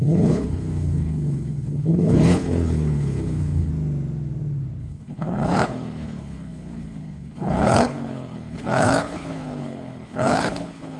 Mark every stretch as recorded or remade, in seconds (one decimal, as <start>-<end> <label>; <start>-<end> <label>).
0.0-3.7 remade; 3.7-4.8 recorded; 4.8-11.0 remade

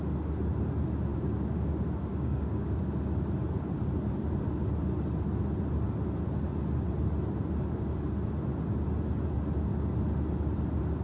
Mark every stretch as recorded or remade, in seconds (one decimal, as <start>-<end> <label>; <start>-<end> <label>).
0.0-1.1 recorded; 1.1-1.7 remade; 1.7-2.1 recorded; 2.1-2.8 remade; 2.8-11.0 recorded

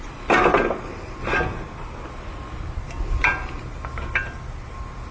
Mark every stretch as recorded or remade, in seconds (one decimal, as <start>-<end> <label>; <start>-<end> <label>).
0.0-5.1 recorded

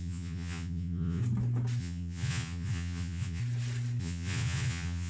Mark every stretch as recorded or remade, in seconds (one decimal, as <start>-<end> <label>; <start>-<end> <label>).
0.0-1.2 remade; 1.2-1.8 recorded; 1.8-3.4 remade; 3.4-4.0 recorded; 4.0-5.1 remade

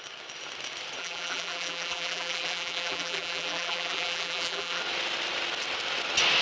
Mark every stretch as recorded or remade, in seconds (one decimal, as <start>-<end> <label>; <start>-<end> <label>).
0.0-1.0 recorded; 1.0-4.8 remade; 4.8-6.4 recorded

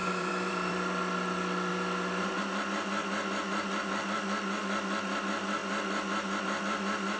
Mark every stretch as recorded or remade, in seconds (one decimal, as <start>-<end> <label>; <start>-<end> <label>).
0.0-0.7 remade; 0.7-7.2 recorded